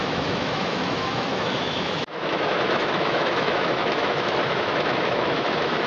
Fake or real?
fake